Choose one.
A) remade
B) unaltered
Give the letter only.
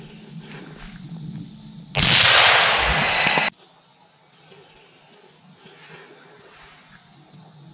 B